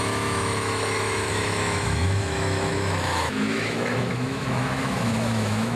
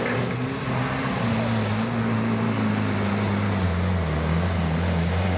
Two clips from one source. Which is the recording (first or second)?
second